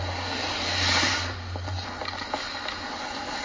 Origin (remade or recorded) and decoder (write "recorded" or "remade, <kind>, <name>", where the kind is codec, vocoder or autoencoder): recorded